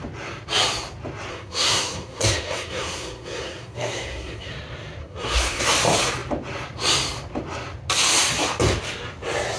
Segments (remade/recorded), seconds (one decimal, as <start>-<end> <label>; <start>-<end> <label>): 0.0-1.3 recorded; 1.3-4.5 remade; 4.5-5.0 recorded; 5.0-5.6 remade; 5.6-9.6 recorded